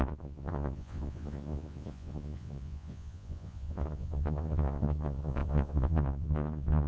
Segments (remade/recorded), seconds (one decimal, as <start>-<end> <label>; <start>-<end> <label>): 0.0-6.9 remade